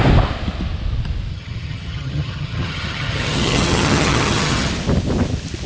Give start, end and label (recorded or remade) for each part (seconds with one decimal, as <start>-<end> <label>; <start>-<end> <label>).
0.0-1.3 recorded; 1.3-4.7 remade; 4.7-5.7 recorded